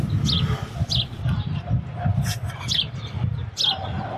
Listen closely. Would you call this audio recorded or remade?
recorded